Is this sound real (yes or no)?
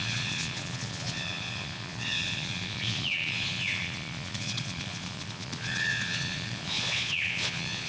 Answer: no